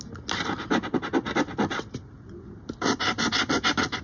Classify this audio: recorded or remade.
recorded